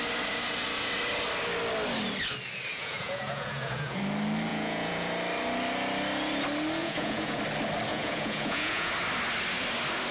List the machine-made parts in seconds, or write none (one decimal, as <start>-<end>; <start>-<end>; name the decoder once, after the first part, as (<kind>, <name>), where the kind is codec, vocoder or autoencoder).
2.7-4.0 (vocoder, Vocos); 4.5-5.1; 6.8-7.4; 7.9-8.9